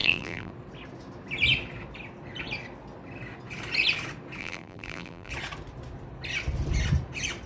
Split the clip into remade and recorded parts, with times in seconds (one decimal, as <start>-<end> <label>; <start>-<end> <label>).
0.0-0.5 remade; 0.5-4.4 recorded; 4.4-5.3 remade; 5.3-7.5 recorded